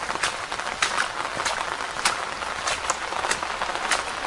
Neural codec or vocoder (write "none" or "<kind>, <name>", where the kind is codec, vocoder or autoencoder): none